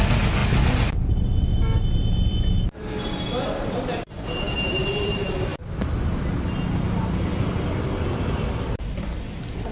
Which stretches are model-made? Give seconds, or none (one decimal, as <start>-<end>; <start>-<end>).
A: 4.8-5.3